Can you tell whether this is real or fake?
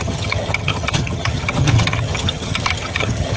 fake